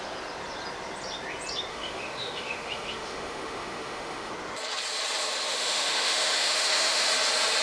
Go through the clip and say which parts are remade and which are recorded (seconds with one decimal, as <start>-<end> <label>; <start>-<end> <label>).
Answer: 0.0-1.7 recorded; 1.7-4.3 remade; 4.3-5.5 recorded; 5.5-7.1 remade; 7.1-7.6 recorded